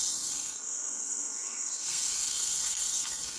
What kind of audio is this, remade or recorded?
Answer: remade